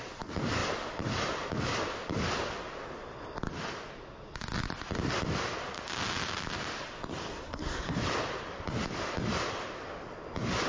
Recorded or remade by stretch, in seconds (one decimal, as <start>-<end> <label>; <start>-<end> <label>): 0.0-7.3 recorded; 7.3-8.0 remade; 8.0-10.7 recorded